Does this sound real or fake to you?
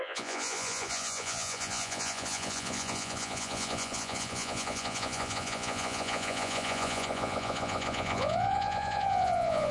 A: fake